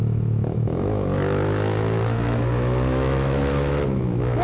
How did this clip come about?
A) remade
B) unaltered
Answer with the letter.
A